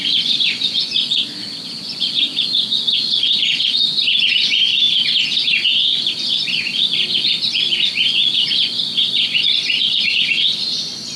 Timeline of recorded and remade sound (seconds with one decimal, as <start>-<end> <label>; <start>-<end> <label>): 0.0-4.7 remade; 4.7-5.7 recorded; 5.7-11.2 remade